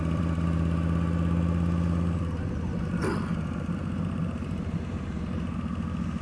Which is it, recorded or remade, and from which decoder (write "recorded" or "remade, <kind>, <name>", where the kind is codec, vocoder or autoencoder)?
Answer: recorded